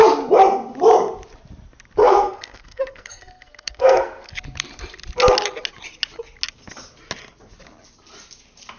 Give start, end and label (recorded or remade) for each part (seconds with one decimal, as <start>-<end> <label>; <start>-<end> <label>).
0.0-2.0 recorded; 2.0-4.3 remade; 4.3-8.8 recorded

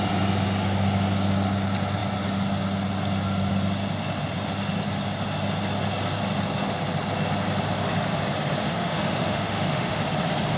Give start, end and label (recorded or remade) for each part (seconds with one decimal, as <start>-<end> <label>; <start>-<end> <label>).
0.0-8.6 recorded; 8.6-10.0 remade; 10.0-10.6 recorded

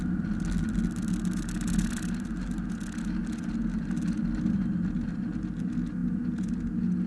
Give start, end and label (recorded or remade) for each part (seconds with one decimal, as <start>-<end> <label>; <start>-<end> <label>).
0.0-7.1 recorded

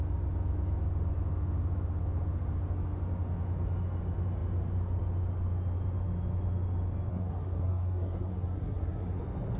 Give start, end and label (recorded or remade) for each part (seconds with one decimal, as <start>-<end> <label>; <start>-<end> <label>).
0.0-7.1 recorded; 7.1-9.2 remade; 9.2-9.6 recorded

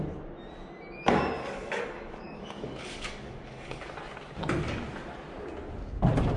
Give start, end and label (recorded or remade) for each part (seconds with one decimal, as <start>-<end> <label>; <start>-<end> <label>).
0.0-1.4 recorded; 1.4-3.9 remade; 3.9-6.4 recorded